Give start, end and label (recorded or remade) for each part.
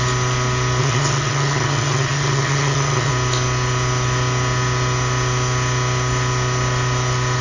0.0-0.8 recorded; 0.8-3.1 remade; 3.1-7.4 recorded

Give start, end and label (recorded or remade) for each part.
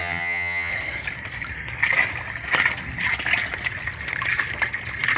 0.0-0.7 remade; 0.7-5.2 recorded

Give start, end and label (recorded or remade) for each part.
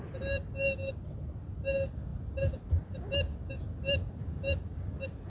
0.0-5.3 recorded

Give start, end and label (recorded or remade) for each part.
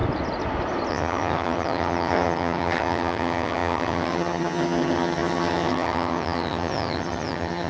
0.0-0.9 recorded; 0.9-7.7 remade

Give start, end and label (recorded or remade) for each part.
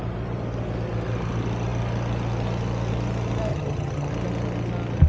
0.0-3.5 recorded; 3.5-4.1 remade; 4.1-5.1 recorded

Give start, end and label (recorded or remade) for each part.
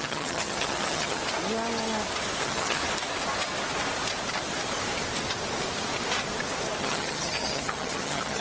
0.0-1.2 remade; 1.2-2.4 recorded; 2.4-2.8 remade; 2.8-6.8 recorded; 6.8-8.4 remade